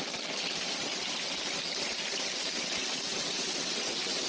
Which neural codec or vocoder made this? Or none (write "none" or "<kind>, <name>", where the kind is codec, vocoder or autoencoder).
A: none